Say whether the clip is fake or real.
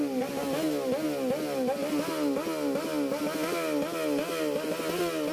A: real